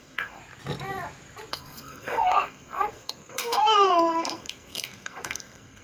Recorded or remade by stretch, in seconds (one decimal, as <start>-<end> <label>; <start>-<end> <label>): 0.0-0.4 remade; 0.4-1.5 recorded; 1.5-5.8 remade